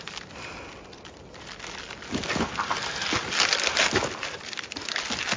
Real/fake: real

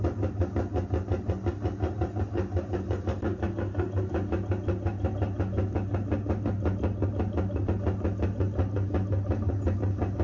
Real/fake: real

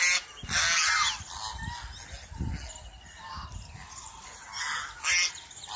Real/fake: real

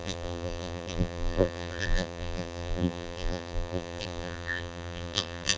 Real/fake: fake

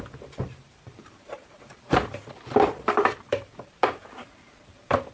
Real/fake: fake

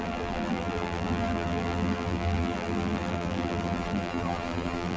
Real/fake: fake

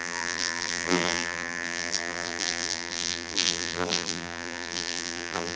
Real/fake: fake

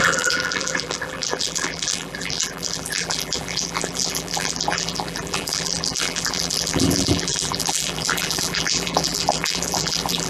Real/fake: fake